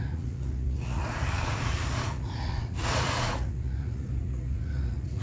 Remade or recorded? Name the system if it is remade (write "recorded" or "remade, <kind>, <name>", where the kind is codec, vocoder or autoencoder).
remade, vocoder, Vocos